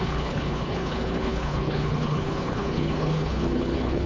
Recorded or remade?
remade